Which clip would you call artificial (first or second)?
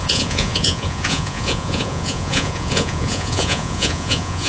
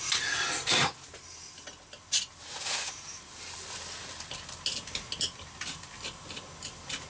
first